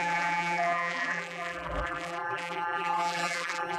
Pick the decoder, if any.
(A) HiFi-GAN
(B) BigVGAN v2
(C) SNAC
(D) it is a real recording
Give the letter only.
B